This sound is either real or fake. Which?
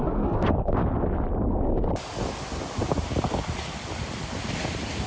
real